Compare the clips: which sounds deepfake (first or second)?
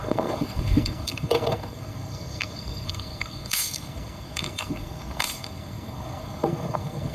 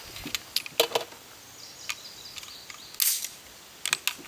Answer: first